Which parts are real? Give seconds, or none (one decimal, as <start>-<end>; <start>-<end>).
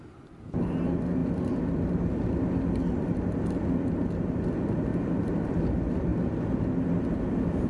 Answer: 0.0-4.9; 5.6-7.7